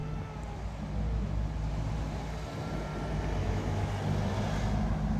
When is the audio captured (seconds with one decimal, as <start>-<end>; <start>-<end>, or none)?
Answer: 0.0-3.4; 3.9-5.2